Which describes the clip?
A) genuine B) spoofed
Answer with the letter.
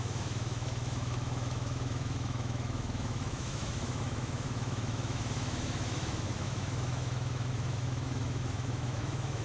B